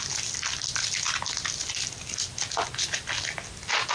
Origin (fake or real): real